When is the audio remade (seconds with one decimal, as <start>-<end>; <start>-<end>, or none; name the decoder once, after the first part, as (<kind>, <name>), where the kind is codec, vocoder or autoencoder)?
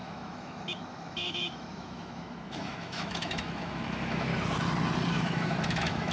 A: 0.0-4.3 (autoencoder, DAC-VAE); 5.1-6.1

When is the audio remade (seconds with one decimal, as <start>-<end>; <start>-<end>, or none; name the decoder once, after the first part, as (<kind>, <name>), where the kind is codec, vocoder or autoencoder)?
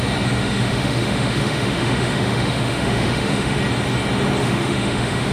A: 0.4-3.6 (autoencoder, DAC-VAE); 4.4-5.3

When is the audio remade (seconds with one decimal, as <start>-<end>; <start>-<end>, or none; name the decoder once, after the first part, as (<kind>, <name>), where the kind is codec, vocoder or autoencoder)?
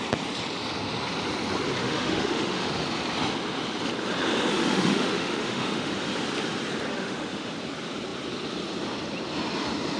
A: 1.8-2.7 (autoencoder, DAC-VAE); 4.5-5.9; 6.9-7.5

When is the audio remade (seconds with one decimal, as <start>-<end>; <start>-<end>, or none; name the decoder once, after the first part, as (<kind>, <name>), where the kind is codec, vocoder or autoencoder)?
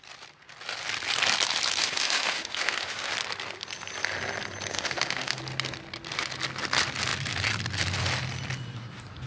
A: 1.8-3.1 (autoencoder, DAC-VAE); 4.7-5.4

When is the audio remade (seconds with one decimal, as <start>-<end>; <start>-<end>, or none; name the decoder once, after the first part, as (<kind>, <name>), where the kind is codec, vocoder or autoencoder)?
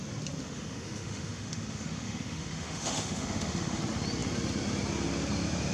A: 0.4-3.8 (autoencoder, DAC-VAE)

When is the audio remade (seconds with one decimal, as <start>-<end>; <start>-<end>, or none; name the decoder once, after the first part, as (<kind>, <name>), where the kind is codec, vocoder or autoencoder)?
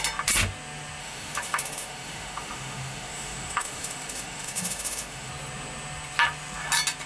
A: 1.0-5.3 (autoencoder, DAC-VAE)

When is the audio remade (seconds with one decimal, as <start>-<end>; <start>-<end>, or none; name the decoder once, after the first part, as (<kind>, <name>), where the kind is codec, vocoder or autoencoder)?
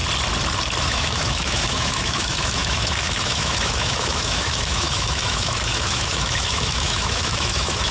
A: 0.8-7.9 (autoencoder, DAC-VAE)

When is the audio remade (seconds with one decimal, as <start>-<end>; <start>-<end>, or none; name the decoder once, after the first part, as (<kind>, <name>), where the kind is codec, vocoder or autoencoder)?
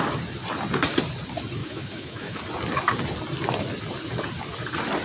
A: 1.6-2.4 (autoencoder, DAC-VAE)